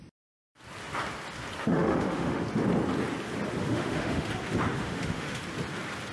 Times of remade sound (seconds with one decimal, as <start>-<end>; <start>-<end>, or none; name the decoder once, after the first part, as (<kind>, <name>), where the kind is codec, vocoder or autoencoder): 1.6-2.4 (autoencoder, DAC-VAE); 3.6-4.3; 4.7-5.4